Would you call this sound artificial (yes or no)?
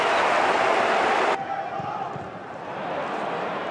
no